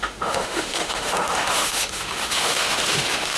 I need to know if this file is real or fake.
fake